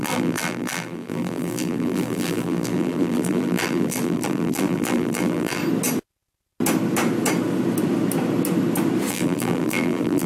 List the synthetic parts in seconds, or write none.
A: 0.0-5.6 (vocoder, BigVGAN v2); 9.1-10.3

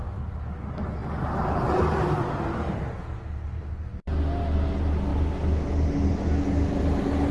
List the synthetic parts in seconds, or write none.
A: none

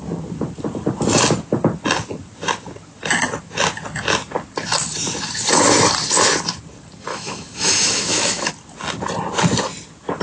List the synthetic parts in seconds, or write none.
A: 7.1-8.5 (autoencoder, DAC-VAE)